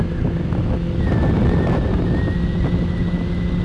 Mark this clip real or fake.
real